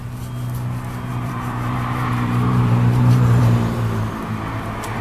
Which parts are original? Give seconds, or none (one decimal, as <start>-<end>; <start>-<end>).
0.0-1.1; 4.1-5.0